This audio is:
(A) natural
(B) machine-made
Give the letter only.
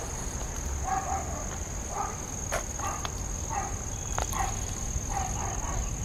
A